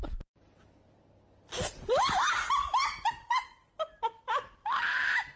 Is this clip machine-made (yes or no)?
no